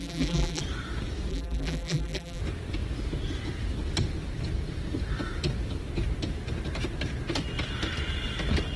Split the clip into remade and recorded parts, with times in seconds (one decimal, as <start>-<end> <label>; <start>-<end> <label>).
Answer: 0.0-0.6 remade; 0.6-1.3 recorded; 1.3-2.4 remade; 2.4-8.8 recorded